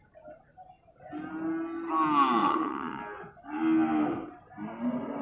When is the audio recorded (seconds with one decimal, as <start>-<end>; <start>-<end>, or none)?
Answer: 0.0-2.4; 3.0-5.2